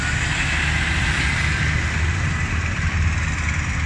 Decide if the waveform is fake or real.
real